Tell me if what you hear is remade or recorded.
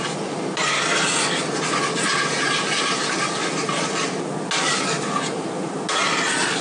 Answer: recorded